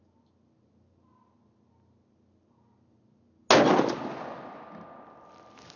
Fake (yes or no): no